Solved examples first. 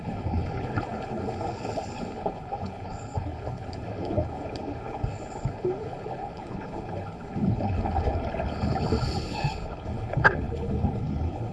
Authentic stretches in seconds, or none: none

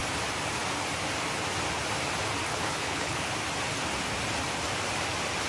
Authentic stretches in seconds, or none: 0.0-2.5; 3.3-5.5

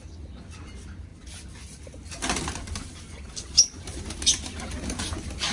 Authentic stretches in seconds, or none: 0.0-5.5

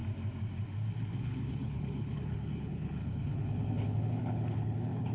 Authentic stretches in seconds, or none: 0.0-1.1